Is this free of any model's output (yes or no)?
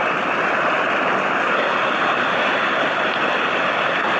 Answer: yes